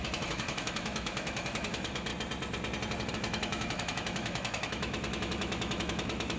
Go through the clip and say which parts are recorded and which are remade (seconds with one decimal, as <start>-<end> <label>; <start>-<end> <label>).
0.0-2.1 remade; 2.1-3.1 recorded; 3.1-6.4 remade